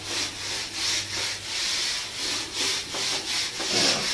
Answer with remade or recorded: recorded